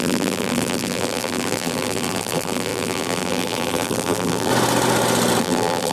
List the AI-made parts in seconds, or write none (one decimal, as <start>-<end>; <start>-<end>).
0.0-4.5; 5.4-5.9